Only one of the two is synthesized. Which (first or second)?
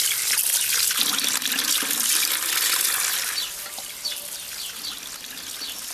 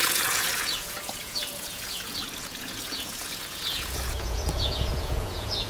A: second